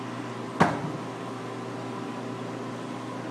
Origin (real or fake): real